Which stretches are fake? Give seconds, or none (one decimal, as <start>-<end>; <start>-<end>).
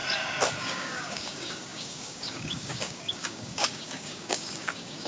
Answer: 0.6-5.1